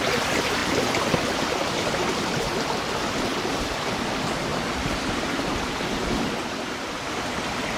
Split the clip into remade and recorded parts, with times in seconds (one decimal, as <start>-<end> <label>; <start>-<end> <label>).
0.0-0.6 recorded; 0.6-2.5 remade; 2.5-3.3 recorded; 3.3-4.1 remade; 4.1-7.8 recorded